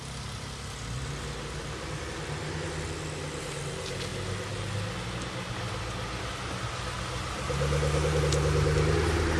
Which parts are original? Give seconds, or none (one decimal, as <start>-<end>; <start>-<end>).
0.0-9.4